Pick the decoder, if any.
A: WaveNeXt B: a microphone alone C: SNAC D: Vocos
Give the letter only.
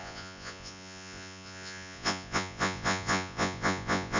D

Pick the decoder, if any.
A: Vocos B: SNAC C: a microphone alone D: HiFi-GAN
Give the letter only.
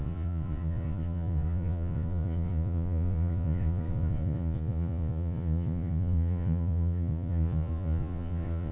A